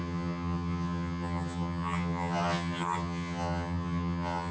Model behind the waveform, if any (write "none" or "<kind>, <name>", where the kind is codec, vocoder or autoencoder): vocoder, HiFi-GAN